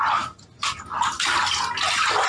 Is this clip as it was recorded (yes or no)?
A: yes